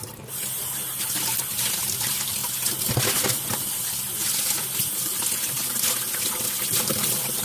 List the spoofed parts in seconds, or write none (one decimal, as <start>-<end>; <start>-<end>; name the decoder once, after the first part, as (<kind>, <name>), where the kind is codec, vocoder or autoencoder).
0.0-2.4 (vocoder, BigVGAN v2); 3.6-4.2; 6.9-7.4